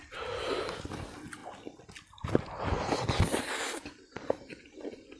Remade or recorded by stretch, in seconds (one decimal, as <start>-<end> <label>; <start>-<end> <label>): 0.0-5.2 recorded